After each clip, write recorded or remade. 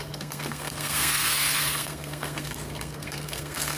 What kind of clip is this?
remade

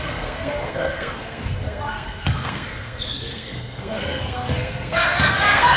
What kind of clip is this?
remade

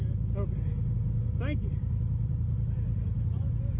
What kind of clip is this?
recorded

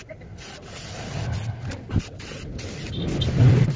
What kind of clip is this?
recorded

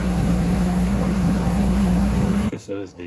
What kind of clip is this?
remade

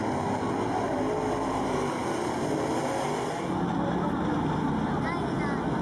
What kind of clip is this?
recorded